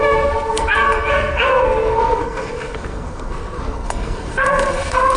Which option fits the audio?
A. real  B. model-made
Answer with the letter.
B